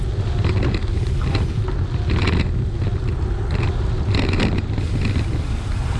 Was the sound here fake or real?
real